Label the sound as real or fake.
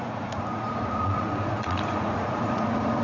fake